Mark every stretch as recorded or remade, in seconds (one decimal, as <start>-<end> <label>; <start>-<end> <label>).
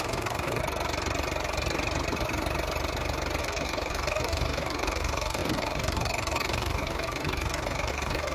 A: 0.0-0.6 remade; 0.6-3.4 recorded; 3.4-8.3 remade